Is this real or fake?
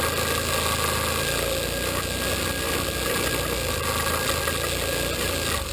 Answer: real